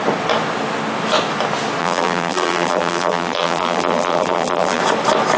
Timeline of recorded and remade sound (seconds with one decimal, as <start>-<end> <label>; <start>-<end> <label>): 0.0-1.8 recorded; 1.8-4.8 remade; 4.8-5.4 recorded